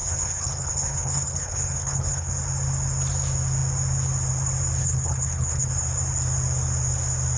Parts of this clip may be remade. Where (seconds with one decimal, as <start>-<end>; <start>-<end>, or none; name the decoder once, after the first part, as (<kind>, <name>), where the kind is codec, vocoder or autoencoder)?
0.0-2.3 (codec, HILCodec); 4.8-5.7